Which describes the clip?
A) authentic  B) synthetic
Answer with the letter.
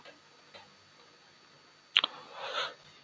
A